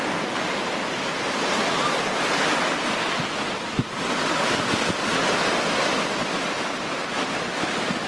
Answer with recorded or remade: recorded